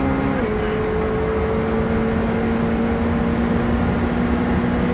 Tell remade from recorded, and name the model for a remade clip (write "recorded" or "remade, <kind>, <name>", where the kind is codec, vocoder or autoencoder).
recorded